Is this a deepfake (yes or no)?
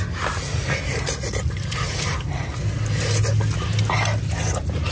no